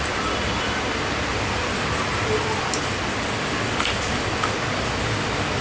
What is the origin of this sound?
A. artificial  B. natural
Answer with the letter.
B